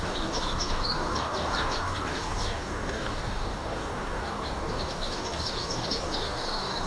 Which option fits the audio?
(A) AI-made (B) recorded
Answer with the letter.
A